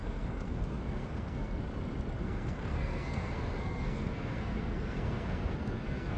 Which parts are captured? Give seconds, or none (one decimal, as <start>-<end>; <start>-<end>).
1.6-2.2